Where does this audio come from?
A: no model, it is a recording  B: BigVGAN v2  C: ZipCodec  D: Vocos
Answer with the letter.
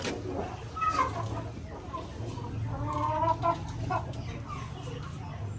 A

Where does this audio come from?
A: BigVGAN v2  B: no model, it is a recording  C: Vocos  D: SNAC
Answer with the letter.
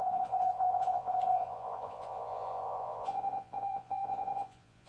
C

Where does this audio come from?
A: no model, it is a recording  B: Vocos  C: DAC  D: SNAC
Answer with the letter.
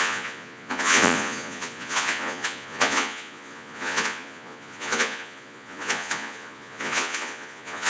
B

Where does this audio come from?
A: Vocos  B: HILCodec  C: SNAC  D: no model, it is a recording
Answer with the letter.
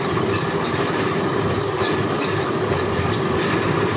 D